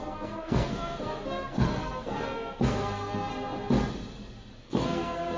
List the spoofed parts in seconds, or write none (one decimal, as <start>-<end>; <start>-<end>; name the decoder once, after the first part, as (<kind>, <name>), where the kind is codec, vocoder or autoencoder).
0.0-3.3 (codec, SNAC); 4.6-5.4